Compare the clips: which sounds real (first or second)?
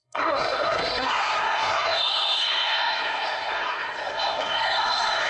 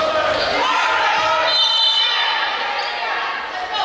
second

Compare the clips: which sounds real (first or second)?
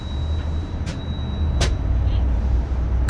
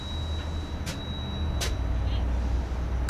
second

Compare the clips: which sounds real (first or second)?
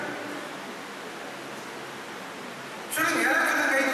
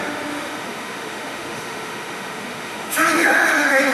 first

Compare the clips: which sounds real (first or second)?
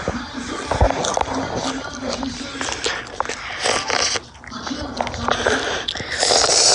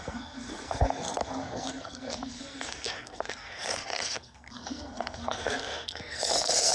first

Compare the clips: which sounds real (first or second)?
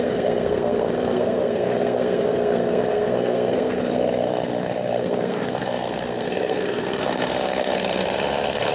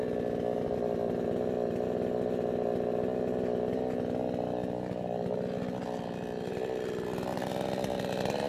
second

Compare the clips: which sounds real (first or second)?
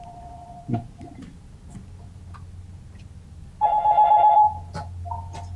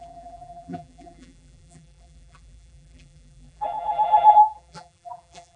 first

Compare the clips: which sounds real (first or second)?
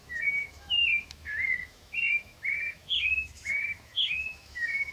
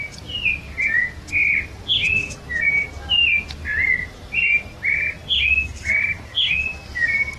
second